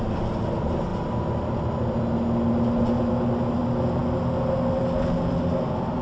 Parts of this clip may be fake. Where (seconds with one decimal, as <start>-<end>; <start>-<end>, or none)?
none